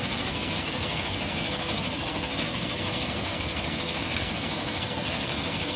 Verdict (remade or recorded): remade